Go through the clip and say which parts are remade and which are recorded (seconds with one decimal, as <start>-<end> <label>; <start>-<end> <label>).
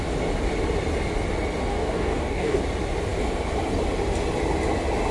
0.0-1.7 recorded; 1.7-2.6 remade; 2.6-5.1 recorded